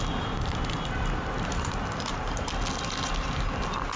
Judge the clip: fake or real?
real